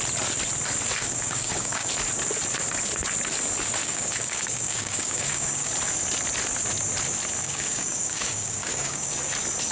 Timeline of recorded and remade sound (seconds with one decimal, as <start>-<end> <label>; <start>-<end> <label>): 0.0-1.0 recorded; 1.0-1.9 remade; 1.9-3.8 recorded; 3.8-5.7 remade; 5.7-7.4 recorded; 7.4-9.1 remade; 9.1-9.7 recorded